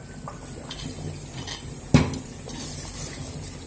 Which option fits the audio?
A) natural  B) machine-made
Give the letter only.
A